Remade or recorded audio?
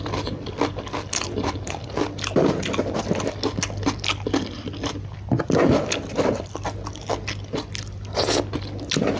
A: recorded